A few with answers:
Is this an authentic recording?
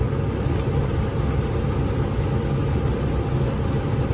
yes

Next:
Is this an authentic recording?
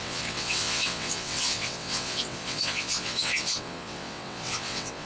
no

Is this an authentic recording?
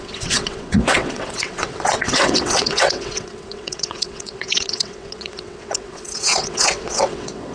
no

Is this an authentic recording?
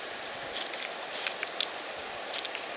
yes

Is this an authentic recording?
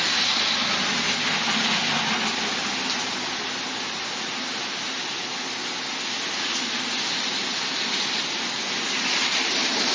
yes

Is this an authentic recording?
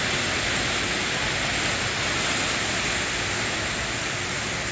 yes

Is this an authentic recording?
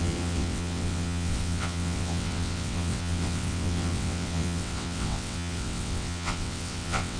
no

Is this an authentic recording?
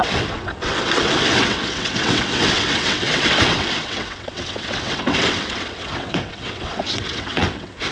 no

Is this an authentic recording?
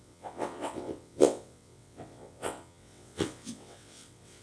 no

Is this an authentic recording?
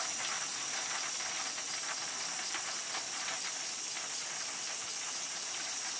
yes